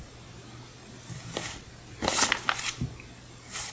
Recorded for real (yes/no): yes